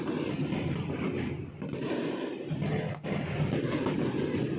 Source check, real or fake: real